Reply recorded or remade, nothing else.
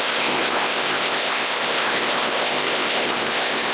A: remade